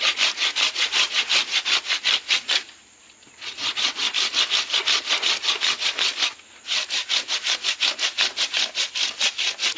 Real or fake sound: real